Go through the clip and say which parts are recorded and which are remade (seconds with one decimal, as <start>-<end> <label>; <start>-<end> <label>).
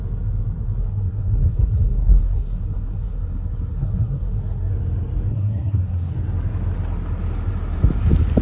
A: 0.0-0.8 recorded; 0.8-4.7 remade; 4.7-5.3 recorded; 5.3-6.1 remade; 6.1-8.4 recorded